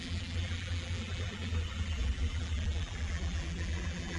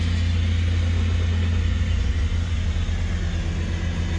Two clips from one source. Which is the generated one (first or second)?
first